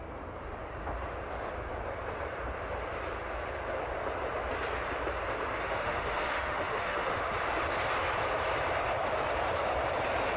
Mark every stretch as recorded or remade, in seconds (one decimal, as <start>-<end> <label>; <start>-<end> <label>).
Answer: 0.0-5.6 recorded; 5.6-7.2 remade; 7.2-10.4 recorded